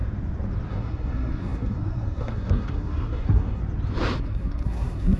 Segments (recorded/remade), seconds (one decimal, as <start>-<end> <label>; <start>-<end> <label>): 0.0-0.7 recorded; 0.7-3.6 remade; 3.6-4.2 recorded; 4.2-5.2 remade